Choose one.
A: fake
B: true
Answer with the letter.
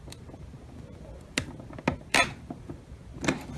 B